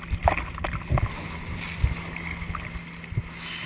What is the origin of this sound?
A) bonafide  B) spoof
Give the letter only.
A